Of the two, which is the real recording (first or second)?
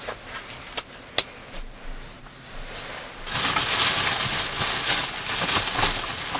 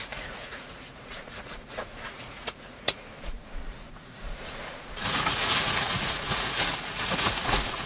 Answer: first